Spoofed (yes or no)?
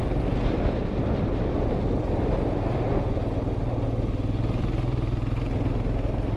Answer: no